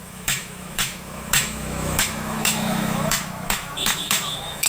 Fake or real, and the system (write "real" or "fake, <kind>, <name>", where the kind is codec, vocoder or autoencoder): fake, autoencoder, DAC-VAE